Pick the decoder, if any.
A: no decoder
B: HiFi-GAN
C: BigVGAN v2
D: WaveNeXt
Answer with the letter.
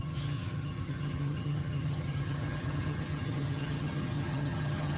B